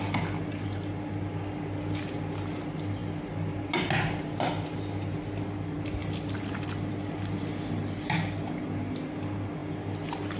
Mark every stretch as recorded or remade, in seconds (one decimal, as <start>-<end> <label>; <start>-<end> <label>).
0.0-10.4 recorded